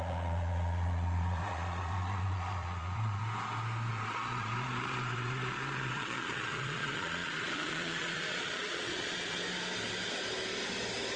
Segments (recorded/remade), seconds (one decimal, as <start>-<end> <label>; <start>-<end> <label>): 0.0-3.2 remade; 3.2-3.9 recorded; 3.9-9.4 remade; 9.4-11.2 recorded